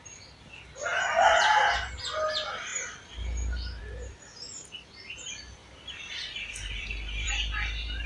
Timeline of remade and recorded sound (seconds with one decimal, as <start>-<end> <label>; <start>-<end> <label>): 0.0-5.6 recorded; 5.6-7.3 remade; 7.3-8.1 recorded